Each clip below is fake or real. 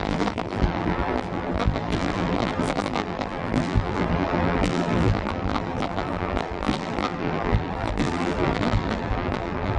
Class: fake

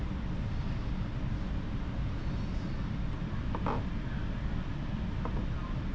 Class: real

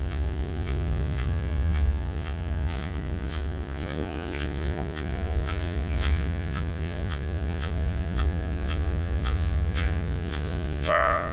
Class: fake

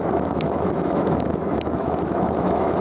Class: fake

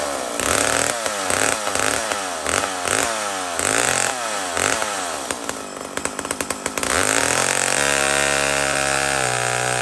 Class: real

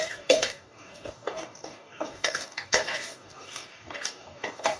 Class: fake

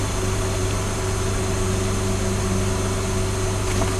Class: real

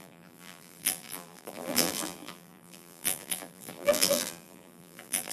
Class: fake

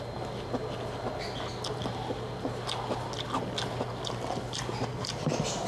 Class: real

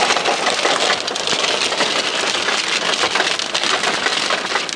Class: real